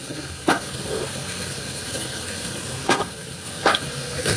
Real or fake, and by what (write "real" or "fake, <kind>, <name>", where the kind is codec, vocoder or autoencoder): fake, codec, SNAC